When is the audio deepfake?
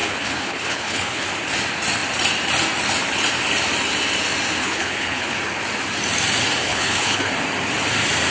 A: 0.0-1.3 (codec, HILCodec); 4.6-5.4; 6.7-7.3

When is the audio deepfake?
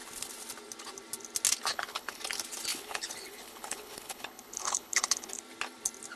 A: 1.7-2.2 (codec, HILCodec); 2.7-5.4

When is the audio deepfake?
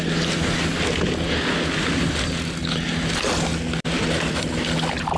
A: none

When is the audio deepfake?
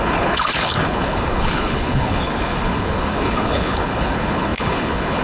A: 0.0-5.2 (codec, HILCodec)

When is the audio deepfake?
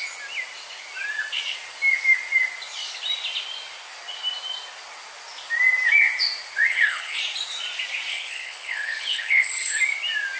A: 6.7-7.2 (codec, HILCodec); 8.1-9.8